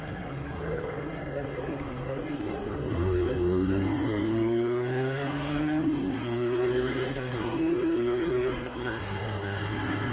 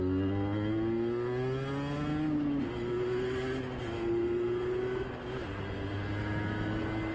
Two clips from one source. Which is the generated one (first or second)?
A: first